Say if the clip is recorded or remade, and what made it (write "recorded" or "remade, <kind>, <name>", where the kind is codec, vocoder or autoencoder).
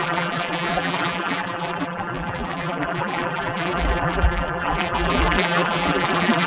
remade, vocoder, BigVGAN v2